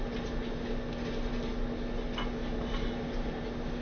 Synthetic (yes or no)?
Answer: no